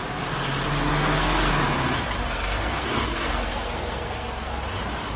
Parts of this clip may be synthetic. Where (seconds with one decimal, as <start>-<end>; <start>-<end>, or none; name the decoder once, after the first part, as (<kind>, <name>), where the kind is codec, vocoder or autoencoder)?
0.9-1.5 (codec, SNAC); 2.2-4.5